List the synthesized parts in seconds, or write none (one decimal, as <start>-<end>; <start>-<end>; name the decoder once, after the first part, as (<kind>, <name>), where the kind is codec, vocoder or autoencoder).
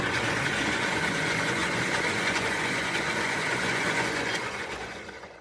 0.0-5.4 (vocoder, Vocos)